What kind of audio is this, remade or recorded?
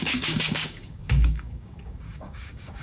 remade